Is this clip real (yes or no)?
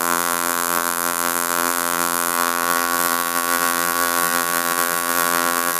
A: no